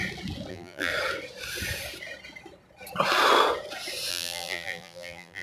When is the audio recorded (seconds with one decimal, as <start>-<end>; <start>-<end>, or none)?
0.0-0.5; 0.9-4.1